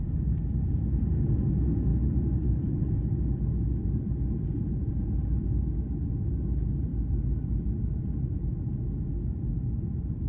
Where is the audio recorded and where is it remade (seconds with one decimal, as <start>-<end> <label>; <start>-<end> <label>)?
0.0-10.3 recorded